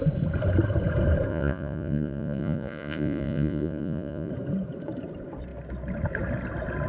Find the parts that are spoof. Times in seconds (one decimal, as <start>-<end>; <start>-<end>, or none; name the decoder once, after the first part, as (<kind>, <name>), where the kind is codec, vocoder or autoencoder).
1.3-4.3 (vocoder, Vocos)